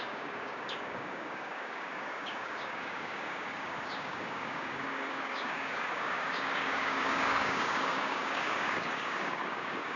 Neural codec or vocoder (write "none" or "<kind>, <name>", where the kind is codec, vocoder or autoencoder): codec, DAC